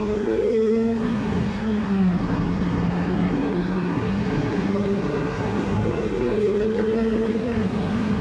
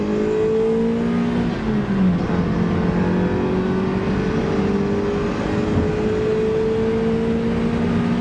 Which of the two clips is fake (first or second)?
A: first